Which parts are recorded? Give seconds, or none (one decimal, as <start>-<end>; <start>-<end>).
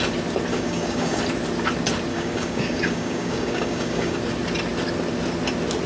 0.0-0.5; 1.2-2.1; 4.2-5.9